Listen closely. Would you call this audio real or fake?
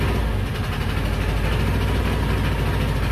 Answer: real